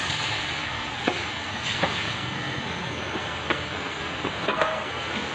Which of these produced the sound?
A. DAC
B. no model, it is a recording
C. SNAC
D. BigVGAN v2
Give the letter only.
C